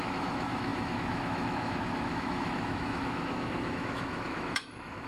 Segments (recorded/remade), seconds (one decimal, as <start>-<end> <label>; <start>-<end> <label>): 0.0-5.1 remade